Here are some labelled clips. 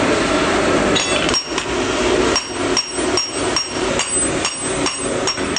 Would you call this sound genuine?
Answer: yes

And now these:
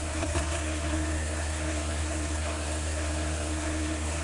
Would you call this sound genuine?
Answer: no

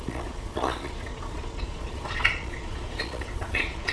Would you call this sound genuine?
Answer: no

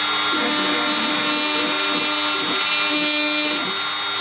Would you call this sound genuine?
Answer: yes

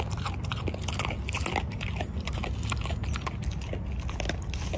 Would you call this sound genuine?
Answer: yes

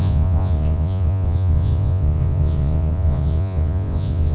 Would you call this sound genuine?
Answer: no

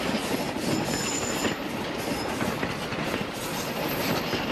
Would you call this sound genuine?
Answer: yes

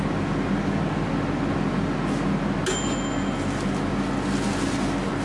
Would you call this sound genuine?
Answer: yes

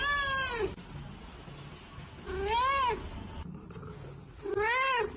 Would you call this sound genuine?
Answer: yes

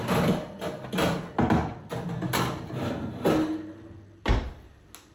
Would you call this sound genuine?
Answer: yes